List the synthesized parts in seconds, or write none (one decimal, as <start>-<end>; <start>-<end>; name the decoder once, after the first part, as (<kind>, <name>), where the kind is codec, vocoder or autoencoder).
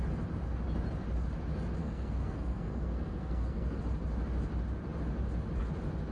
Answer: 1.8-3.8 (codec, SNAC)